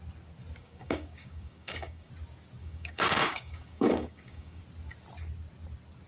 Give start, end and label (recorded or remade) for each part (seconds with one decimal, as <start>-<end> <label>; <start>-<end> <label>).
0.0-0.6 recorded; 0.6-2.1 remade; 2.1-2.6 recorded; 2.6-4.6 remade; 4.6-6.1 recorded